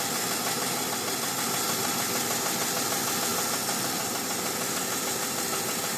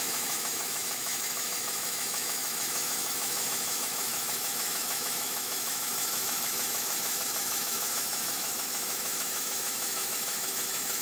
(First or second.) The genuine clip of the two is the first